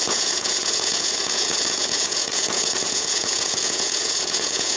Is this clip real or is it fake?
fake